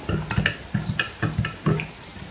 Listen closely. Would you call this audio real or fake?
real